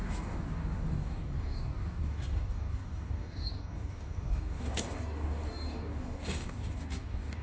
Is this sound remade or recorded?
remade